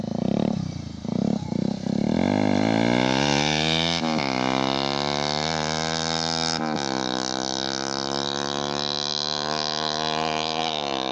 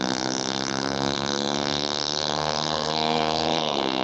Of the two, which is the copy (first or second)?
second